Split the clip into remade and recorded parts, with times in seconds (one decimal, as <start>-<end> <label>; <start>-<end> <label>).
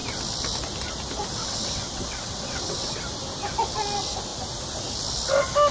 0.0-1.4 recorded; 1.4-2.9 remade; 2.9-5.7 recorded